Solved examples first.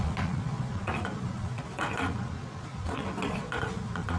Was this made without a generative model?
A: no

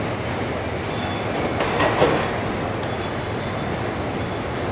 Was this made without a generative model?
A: yes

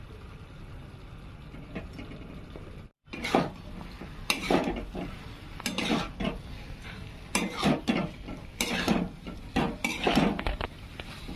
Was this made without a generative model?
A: yes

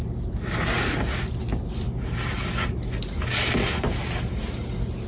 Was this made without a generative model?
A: yes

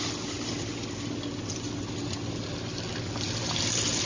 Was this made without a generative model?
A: yes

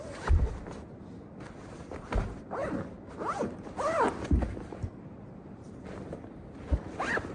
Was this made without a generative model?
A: yes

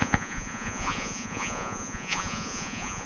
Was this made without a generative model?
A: no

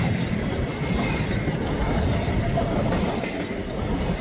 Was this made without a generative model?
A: yes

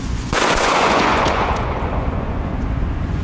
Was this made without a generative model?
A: no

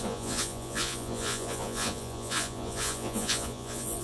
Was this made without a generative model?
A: no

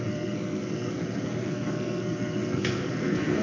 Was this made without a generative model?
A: no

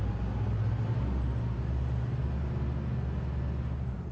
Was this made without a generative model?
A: yes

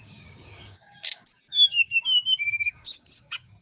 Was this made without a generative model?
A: no